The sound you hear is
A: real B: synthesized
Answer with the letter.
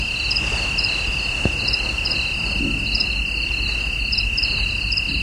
A